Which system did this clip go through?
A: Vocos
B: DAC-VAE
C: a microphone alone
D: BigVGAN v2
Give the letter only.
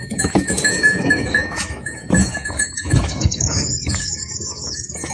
B